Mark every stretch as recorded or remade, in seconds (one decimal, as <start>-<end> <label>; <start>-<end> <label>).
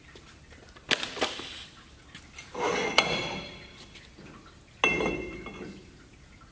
0.0-6.5 recorded